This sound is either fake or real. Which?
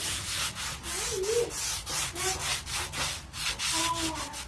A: real